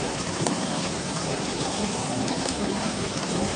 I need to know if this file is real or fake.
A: fake